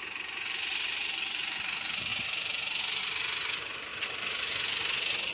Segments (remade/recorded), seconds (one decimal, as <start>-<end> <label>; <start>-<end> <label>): 0.0-5.3 recorded